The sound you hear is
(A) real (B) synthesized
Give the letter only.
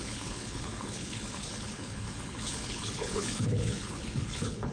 B